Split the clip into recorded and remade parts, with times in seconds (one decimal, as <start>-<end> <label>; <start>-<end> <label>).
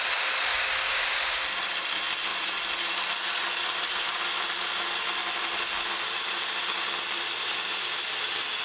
0.0-0.5 recorded; 0.5-1.4 remade; 1.4-8.6 recorded